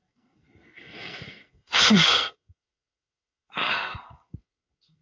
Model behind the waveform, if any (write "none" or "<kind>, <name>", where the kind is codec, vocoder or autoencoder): codec, SNAC